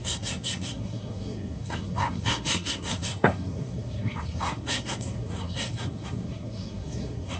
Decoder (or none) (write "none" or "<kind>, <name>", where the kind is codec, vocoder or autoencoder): codec, SNAC